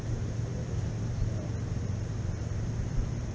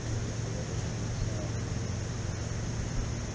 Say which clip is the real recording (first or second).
second